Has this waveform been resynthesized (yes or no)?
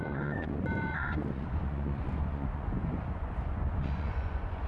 yes